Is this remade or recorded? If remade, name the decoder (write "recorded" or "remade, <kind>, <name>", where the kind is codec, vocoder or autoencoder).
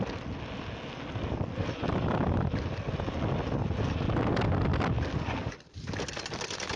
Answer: recorded